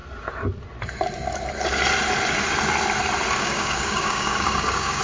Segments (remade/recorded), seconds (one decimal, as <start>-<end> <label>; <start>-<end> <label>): 0.0-3.4 recorded; 3.4-5.0 remade